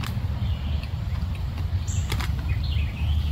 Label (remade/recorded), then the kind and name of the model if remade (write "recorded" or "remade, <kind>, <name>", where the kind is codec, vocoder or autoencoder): recorded